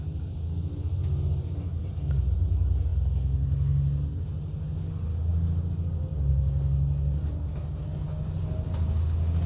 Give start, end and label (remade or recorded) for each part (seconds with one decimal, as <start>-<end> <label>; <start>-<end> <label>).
0.0-9.5 recorded